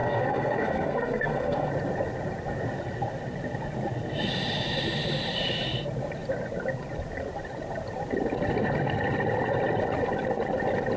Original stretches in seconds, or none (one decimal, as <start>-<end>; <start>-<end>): 1.7-11.0